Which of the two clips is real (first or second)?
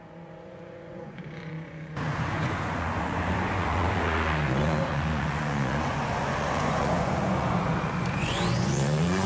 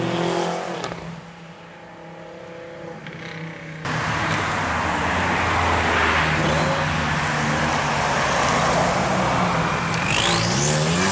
second